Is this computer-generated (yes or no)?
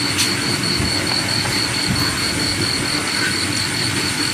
no